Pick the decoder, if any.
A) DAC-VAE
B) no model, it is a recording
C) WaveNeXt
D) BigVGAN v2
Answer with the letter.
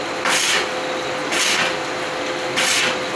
B